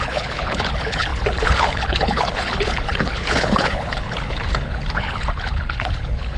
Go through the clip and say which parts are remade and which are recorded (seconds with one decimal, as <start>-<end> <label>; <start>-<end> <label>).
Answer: 0.0-6.4 remade